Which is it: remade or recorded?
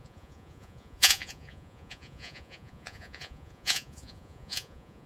remade